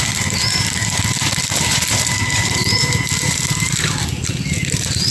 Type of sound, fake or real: real